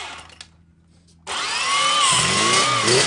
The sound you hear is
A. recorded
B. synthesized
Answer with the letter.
A